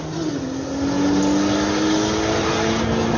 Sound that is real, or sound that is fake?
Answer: real